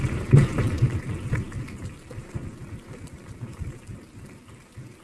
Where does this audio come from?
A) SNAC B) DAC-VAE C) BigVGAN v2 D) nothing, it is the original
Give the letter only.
C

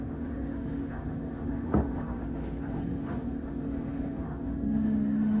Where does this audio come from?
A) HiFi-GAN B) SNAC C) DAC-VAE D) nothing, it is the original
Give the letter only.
C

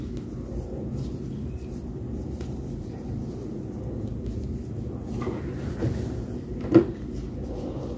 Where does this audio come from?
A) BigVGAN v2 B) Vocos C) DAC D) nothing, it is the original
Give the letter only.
D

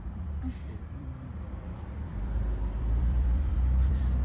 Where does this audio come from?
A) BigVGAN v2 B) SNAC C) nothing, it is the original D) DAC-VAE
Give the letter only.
A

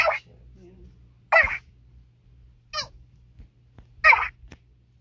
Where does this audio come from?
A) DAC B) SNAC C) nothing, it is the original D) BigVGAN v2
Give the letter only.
C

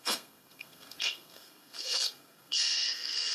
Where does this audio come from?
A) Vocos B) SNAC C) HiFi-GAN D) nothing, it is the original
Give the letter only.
B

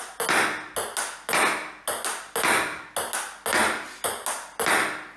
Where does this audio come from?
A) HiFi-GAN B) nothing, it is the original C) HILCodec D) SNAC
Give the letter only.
B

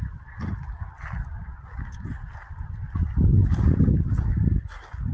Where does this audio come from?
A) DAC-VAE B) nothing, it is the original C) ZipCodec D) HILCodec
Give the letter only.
B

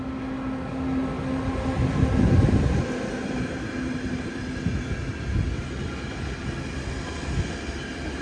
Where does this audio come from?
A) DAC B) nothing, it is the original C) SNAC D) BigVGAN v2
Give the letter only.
B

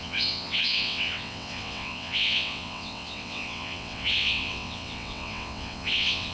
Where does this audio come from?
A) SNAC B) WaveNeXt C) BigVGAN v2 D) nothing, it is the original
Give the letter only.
B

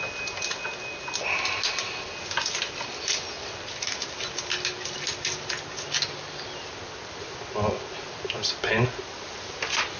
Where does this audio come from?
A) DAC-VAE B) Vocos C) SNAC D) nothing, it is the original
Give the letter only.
D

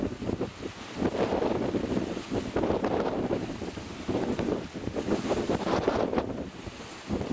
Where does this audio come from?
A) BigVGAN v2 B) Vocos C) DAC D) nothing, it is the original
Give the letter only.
D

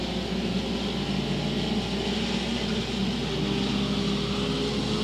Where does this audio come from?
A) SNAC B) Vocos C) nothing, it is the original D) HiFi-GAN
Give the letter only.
C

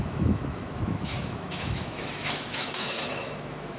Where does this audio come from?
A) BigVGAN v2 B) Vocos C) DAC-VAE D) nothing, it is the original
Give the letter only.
C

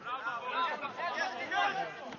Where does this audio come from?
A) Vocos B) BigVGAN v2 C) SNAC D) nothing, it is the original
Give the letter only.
D